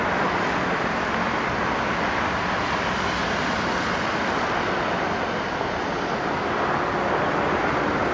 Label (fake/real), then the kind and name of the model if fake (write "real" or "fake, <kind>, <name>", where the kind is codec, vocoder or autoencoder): real